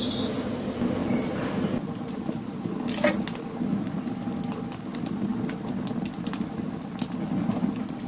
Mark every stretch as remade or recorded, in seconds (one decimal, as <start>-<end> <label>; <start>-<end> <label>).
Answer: 0.0-8.1 recorded